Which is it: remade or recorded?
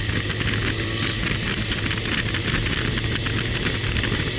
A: recorded